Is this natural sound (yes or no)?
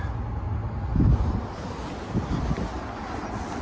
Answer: yes